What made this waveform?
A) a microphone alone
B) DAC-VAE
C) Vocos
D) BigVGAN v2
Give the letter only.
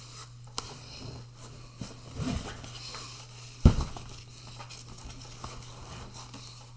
A